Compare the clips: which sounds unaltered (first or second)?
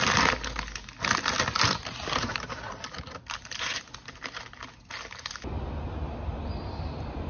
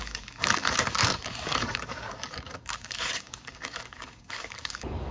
first